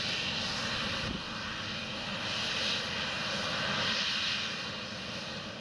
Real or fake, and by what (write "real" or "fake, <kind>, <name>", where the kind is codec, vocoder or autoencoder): real